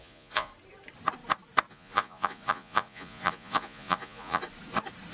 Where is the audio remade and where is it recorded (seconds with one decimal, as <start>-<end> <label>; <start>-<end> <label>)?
0.0-0.5 remade; 0.5-1.7 recorded; 1.7-4.4 remade; 4.4-5.1 recorded